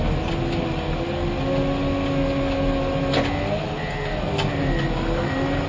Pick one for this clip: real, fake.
real